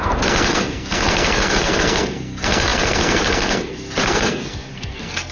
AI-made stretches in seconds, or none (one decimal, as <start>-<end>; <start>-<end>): 0.0-5.3